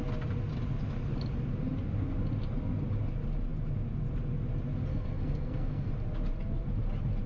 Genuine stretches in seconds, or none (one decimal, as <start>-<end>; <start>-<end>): 0.0-4.9; 5.9-7.3